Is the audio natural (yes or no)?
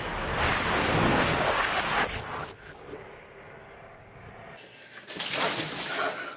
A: yes